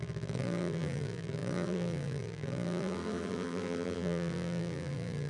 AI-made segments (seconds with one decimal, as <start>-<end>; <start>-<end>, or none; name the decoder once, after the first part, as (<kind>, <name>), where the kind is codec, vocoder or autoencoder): 0.0-5.3 (vocoder, BigVGAN v2)